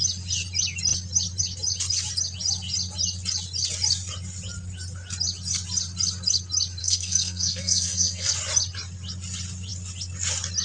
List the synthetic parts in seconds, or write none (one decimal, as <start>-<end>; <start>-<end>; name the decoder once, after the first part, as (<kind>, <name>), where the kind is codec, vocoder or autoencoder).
6.8-8.3 (codec, SNAC)